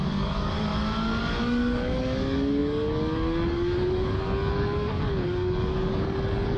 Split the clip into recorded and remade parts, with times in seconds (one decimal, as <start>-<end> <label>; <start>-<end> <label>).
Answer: 0.0-0.7 remade; 0.7-1.2 recorded; 1.2-6.6 remade